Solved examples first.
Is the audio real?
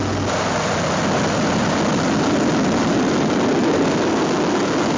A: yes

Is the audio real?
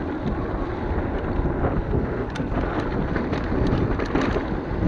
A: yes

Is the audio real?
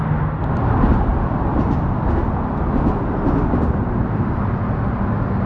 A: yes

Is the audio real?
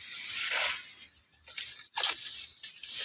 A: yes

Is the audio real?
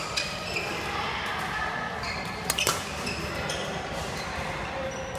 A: yes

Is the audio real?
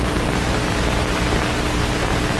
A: yes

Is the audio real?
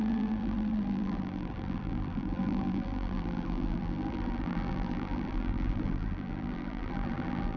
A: no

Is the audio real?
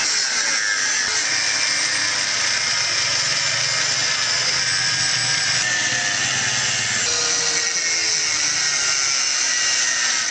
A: yes